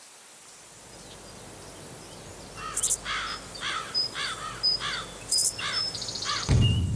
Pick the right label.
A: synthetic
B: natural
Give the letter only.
A